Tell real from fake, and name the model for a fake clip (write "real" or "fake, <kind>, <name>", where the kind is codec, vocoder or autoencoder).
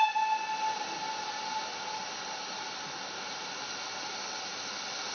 real